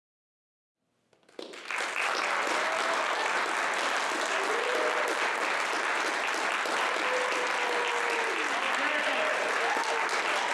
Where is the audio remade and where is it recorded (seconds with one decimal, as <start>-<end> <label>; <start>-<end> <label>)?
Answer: 0.0-10.5 recorded